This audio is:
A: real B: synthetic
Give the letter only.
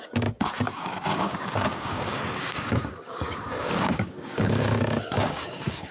B